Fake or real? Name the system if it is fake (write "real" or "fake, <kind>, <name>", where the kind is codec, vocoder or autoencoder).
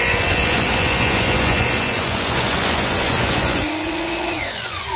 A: fake, vocoder, Vocos